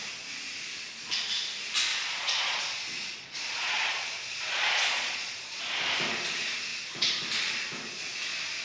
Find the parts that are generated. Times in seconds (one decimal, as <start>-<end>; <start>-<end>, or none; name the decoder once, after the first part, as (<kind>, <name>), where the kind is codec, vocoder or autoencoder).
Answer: 1.9-5.6 (vocoder, Vocos); 6.7-7.2